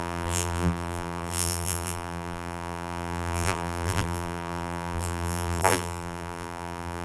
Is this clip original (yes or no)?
no